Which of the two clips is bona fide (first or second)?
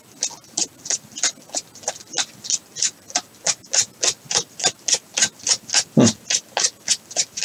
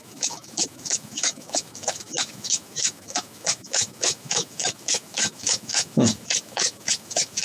first